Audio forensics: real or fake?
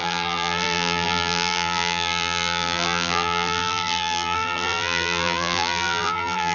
fake